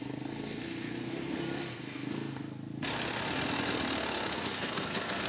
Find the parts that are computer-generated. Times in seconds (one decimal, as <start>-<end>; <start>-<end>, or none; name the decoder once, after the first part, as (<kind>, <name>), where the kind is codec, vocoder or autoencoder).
0.0-2.4 (codec, SNAC); 4.3-5.3